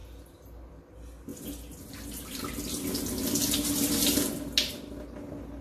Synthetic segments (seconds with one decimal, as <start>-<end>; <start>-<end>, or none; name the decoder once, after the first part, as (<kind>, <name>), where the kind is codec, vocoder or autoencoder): none